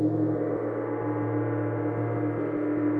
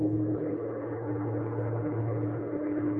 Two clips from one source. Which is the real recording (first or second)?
first